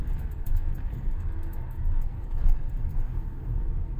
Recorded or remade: remade